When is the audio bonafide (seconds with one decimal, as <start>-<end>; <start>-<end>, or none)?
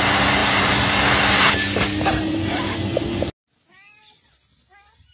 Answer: 0.0-0.4; 1.5-2.1; 2.8-5.1